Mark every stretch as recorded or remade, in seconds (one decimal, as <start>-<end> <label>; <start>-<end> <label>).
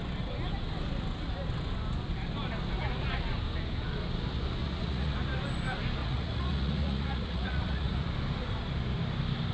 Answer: 0.0-4.6 recorded; 4.6-5.2 remade; 5.2-6.0 recorded; 6.0-8.1 remade; 8.1-9.5 recorded